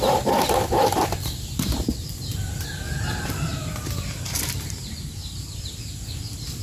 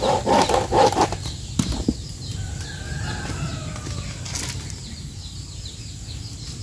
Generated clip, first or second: first